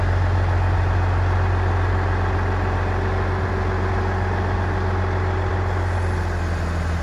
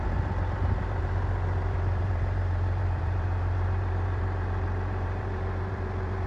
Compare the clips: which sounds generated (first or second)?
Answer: second